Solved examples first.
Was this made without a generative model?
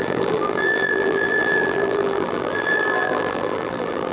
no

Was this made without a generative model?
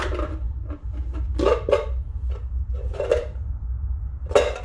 no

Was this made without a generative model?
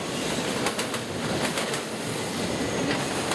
yes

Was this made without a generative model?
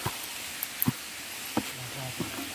yes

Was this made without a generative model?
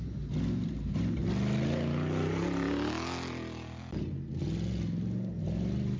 yes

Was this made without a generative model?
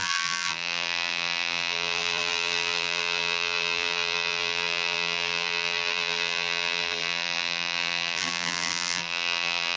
no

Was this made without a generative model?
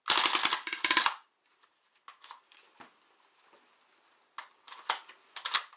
yes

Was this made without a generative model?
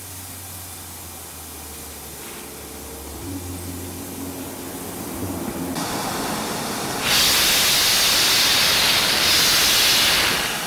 yes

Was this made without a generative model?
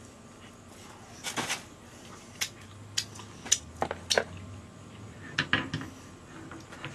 yes